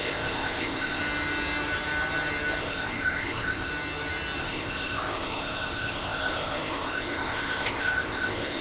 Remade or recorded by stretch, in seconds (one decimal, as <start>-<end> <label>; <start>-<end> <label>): 0.0-1.0 remade; 1.0-2.6 recorded; 2.6-3.7 remade; 3.7-4.4 recorded; 4.4-8.6 remade